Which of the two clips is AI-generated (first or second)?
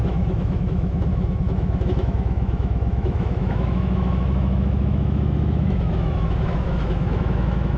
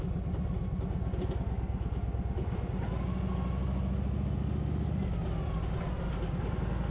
first